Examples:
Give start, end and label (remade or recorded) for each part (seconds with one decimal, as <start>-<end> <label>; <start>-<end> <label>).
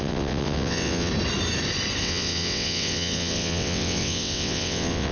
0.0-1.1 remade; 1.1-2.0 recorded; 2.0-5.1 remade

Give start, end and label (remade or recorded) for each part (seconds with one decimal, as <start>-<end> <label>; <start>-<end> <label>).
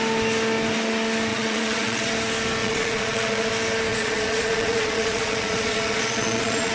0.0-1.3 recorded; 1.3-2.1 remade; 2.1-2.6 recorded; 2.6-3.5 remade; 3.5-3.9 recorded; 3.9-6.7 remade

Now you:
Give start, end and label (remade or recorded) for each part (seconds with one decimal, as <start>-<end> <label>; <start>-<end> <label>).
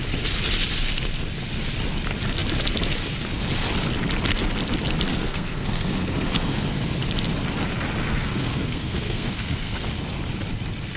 0.0-5.1 recorded; 5.1-6.8 remade; 6.8-8.1 recorded; 8.1-9.9 remade; 9.9-11.0 recorded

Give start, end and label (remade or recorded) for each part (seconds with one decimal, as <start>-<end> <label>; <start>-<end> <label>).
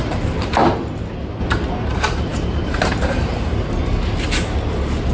0.0-0.6 remade; 0.6-1.4 recorded; 1.4-3.6 remade; 3.6-5.1 recorded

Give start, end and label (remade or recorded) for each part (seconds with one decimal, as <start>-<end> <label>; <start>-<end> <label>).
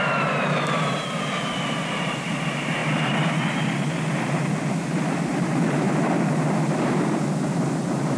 0.0-8.2 recorded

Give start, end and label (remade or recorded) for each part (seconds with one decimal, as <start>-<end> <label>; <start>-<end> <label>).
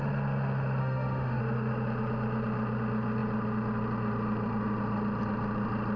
0.0-0.8 recorded; 0.8-1.4 remade; 1.4-6.0 recorded